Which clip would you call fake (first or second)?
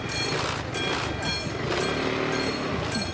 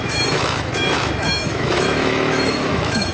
second